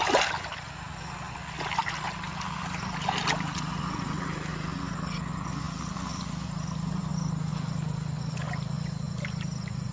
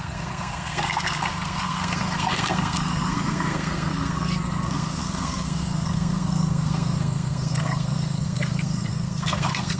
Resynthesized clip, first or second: second